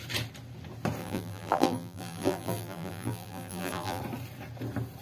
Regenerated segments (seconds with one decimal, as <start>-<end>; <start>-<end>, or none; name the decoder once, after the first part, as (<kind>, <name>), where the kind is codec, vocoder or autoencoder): 1.0-4.0 (vocoder, BigVGAN v2)